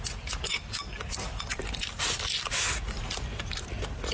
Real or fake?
real